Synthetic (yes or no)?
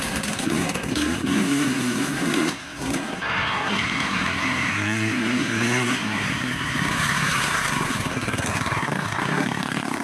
yes